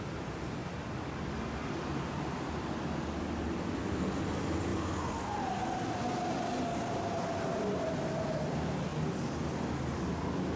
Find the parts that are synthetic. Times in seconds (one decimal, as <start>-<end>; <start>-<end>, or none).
0.0-0.6; 3.8-4.7; 7.8-8.9